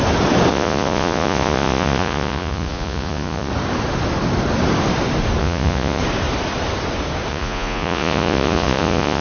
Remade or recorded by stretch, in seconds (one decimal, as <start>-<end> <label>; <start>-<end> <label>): 0.0-0.5 recorded; 0.5-3.5 remade; 3.5-5.4 recorded; 5.4-6.0 remade; 6.0-7.3 recorded; 7.3-9.2 remade